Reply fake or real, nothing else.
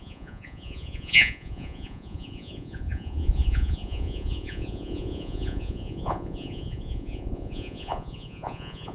fake